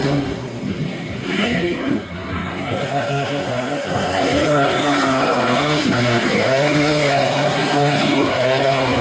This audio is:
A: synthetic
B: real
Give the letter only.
A